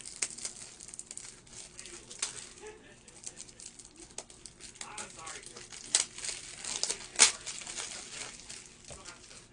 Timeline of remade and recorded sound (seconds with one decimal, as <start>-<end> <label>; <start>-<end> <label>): 0.0-9.5 recorded